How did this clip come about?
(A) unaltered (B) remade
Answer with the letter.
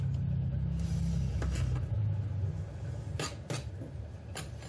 A